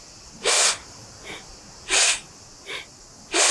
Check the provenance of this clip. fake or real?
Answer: real